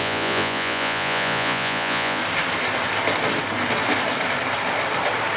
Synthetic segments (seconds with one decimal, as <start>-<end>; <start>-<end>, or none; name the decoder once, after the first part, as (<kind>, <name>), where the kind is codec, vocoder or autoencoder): 0.0-2.2 (vocoder, Vocos)